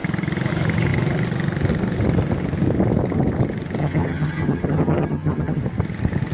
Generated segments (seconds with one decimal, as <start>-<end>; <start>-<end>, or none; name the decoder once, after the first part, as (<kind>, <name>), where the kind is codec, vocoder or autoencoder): 3.8-5.6 (vocoder, HiFi-GAN)